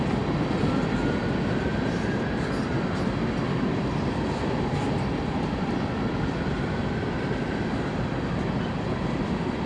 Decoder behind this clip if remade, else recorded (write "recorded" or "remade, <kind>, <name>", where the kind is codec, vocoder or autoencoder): recorded